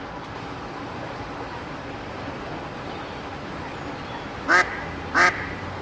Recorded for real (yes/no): yes